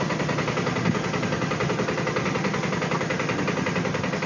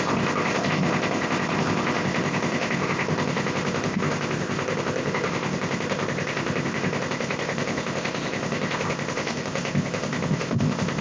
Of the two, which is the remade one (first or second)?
second